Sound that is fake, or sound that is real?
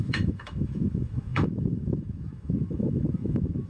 fake